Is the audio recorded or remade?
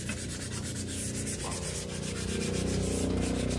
recorded